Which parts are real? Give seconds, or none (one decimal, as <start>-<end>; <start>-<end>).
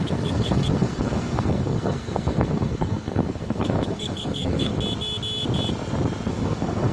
4.7-6.3